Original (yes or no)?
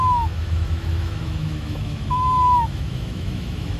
no